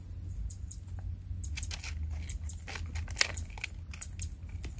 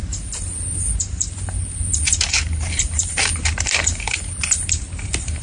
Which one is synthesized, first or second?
second